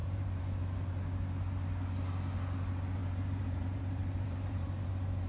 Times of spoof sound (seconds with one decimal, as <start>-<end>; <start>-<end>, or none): 0.0-0.6; 3.0-5.3